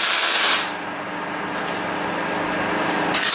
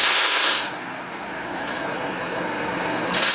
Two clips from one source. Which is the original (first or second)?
first